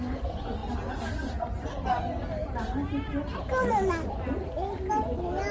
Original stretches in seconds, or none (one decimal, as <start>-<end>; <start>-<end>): 0.0-5.5